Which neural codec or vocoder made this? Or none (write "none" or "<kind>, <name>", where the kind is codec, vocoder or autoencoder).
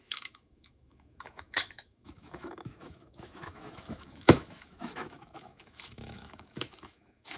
autoencoder, DAC-VAE